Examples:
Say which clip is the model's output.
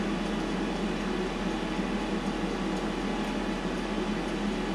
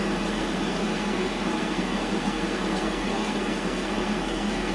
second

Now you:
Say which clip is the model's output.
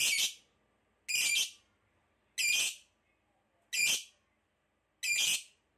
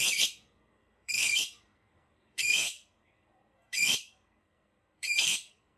second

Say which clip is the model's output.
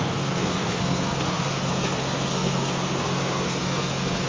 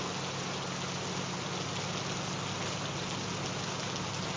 first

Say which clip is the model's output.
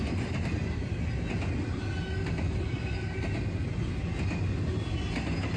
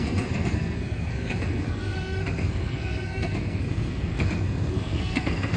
second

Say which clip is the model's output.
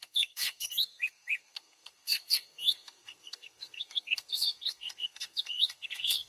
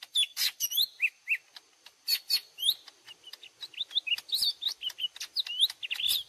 first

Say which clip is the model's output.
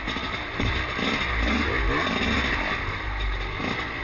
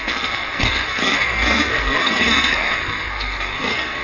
second